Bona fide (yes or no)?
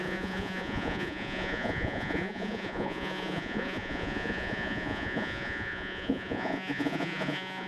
no